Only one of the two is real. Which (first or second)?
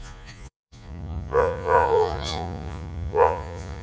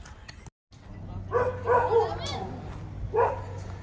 second